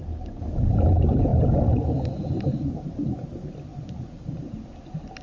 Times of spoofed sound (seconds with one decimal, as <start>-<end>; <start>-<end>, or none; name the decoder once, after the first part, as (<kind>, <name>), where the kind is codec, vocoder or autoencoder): 0.0-5.2 (vocoder, BigVGAN v2)

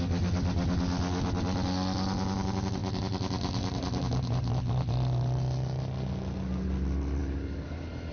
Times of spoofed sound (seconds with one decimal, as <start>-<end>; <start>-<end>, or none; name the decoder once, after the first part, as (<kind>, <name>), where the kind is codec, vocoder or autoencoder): none

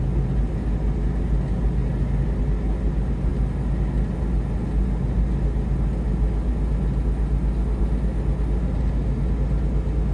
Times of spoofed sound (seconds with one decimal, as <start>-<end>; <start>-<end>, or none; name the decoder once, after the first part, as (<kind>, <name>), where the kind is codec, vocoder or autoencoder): none